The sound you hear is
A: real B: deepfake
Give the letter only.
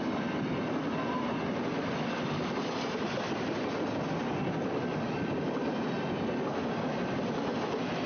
A